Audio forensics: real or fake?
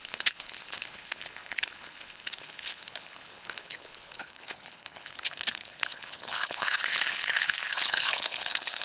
fake